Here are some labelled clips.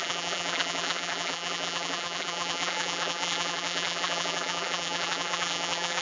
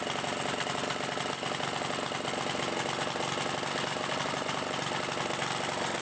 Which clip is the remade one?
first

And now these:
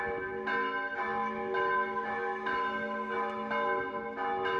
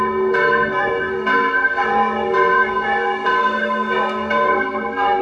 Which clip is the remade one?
second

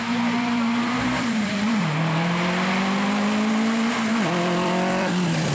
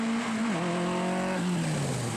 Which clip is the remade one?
first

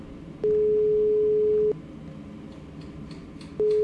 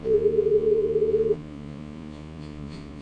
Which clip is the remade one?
second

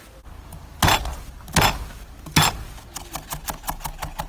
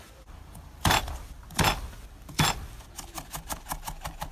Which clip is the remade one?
second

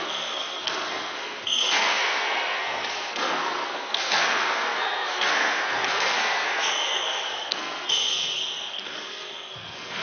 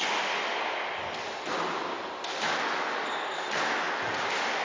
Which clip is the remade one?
first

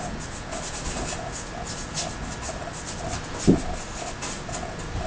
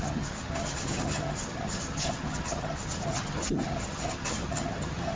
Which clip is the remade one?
second